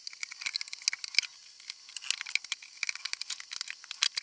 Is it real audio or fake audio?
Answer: real